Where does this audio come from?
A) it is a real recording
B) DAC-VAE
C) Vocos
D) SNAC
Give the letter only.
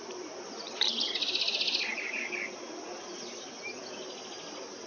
A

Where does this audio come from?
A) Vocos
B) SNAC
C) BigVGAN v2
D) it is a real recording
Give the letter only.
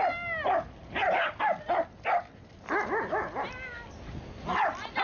D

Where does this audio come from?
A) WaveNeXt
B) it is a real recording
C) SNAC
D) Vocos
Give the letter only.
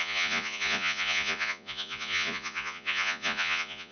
D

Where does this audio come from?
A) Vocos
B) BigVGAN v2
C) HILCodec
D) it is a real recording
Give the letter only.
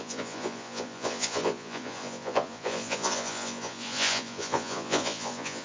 A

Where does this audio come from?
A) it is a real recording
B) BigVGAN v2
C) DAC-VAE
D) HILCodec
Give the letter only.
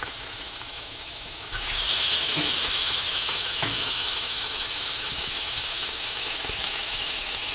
C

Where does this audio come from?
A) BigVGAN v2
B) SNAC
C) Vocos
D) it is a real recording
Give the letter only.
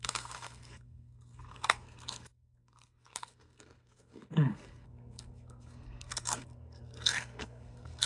B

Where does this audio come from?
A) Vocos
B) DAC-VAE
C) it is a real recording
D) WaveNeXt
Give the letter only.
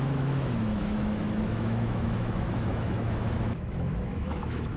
B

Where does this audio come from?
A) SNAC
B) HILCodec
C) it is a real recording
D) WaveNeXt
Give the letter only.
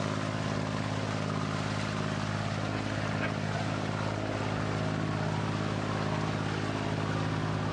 C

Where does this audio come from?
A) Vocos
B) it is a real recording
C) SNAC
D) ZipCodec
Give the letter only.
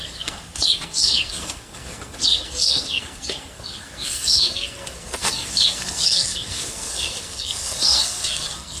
C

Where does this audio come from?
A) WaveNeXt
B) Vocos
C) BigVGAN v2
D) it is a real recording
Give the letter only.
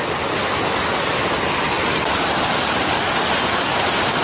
D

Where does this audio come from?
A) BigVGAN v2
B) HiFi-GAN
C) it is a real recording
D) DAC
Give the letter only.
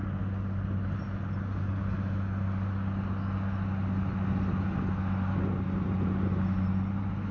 C